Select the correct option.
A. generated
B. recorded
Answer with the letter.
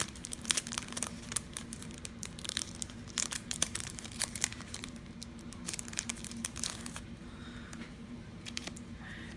A